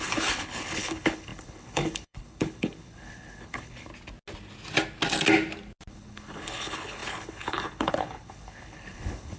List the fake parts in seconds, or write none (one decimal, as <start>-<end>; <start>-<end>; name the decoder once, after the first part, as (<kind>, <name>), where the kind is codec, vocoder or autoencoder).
0.0-3.9 (codec, HILCodec); 5.9-9.4